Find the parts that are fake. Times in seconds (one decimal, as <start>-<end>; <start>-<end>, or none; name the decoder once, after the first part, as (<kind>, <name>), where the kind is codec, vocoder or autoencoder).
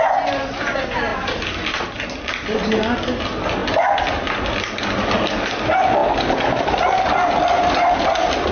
none